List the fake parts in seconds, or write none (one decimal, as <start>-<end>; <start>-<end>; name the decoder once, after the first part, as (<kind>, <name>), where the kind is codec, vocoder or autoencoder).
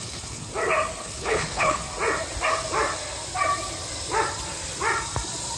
0.0-0.5 (codec, HILCodec); 1.0-1.8